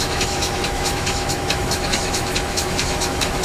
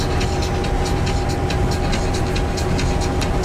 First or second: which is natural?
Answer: second